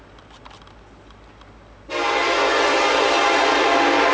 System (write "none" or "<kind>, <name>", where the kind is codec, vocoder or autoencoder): none